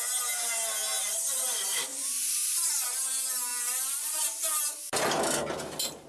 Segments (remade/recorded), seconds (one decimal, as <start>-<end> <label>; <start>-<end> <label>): 0.0-1.9 recorded; 1.9-2.7 remade; 2.7-3.5 recorded; 3.5-5.0 remade; 5.0-6.1 recorded